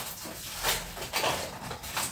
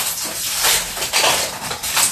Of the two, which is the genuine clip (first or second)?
first